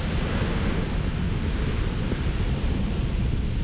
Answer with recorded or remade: recorded